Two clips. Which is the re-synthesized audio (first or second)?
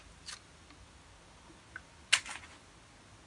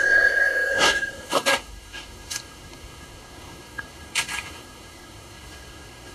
second